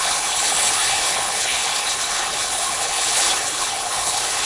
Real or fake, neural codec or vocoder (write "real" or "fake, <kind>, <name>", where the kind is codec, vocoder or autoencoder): fake, codec, HILCodec